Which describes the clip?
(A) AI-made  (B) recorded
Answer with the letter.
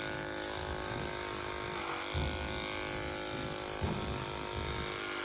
B